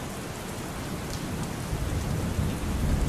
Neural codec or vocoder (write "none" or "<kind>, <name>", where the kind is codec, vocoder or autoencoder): none